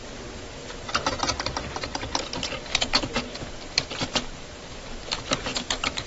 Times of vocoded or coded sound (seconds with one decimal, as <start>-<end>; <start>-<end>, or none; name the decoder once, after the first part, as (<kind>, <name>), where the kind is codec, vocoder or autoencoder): 5.5-6.1 (autoencoder, DAC-VAE)